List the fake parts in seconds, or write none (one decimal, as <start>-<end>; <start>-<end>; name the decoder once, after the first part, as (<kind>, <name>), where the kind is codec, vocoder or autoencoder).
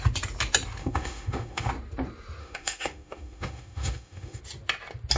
0.8-1.7 (autoencoder, DAC-VAE); 2.4-4.4